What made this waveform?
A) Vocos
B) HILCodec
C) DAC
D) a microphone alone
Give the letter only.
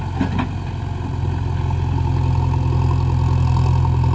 D